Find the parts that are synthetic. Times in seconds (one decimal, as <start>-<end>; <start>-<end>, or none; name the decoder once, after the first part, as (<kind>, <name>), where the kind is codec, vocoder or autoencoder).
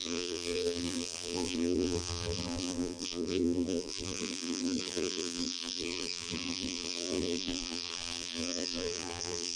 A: 0.0-9.6 (vocoder, BigVGAN v2)